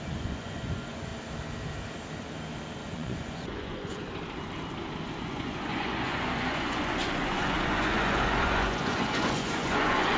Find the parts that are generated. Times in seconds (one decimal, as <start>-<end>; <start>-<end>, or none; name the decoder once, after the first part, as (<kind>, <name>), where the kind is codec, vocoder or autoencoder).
0.0-1.1 (vocoder, Vocos); 2.8-4.0; 5.2-10.2